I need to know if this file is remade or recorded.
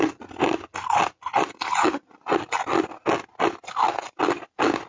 recorded